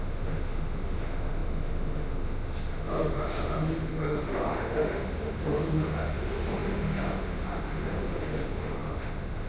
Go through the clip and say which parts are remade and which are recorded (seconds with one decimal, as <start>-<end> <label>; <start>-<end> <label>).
0.0-9.5 remade